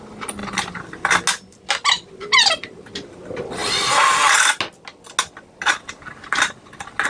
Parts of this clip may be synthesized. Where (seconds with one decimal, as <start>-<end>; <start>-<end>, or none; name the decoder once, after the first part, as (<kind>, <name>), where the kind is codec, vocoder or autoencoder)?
none